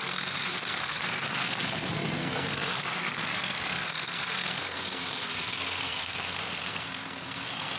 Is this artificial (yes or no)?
yes